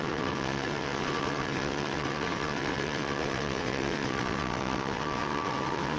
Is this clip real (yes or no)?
no